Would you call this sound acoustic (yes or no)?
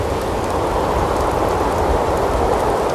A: yes